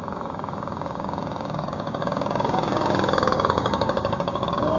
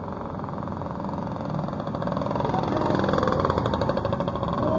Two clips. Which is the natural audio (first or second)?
second